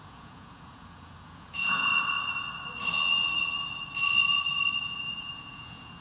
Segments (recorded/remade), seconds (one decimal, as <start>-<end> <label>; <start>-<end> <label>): 0.0-1.9 remade; 1.9-4.8 recorded; 4.8-6.0 remade